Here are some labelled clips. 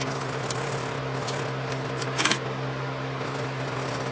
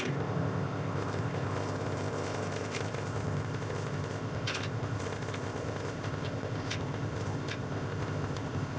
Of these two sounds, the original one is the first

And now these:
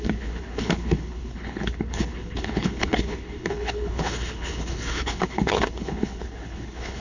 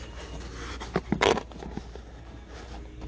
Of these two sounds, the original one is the second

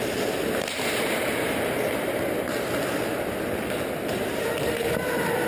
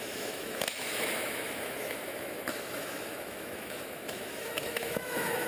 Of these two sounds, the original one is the first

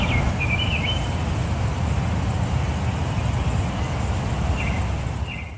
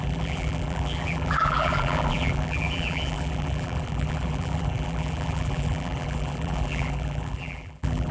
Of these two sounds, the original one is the first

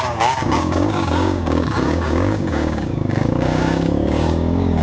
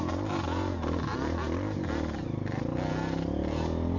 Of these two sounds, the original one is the second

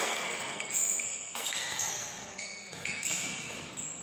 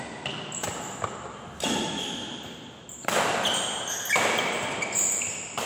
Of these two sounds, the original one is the second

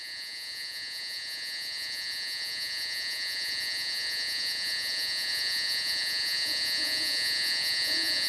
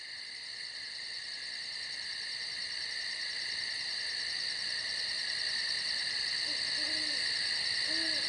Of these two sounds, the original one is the second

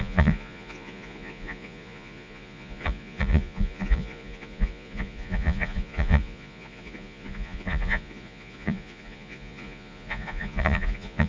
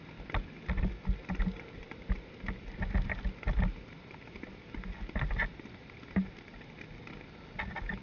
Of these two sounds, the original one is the second